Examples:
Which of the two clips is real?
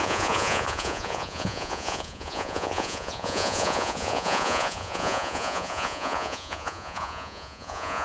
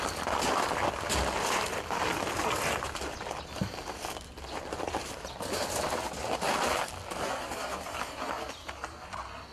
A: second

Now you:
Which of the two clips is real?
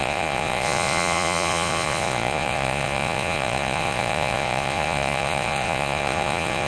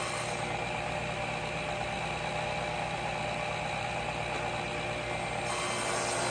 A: second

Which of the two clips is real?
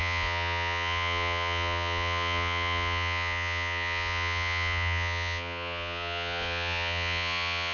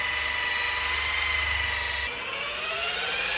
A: second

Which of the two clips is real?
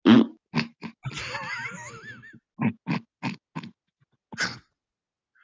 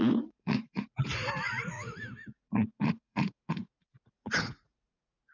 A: first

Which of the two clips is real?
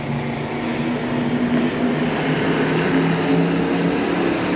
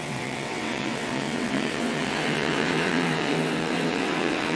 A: first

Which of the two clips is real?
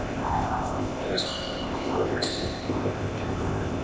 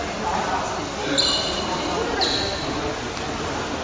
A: second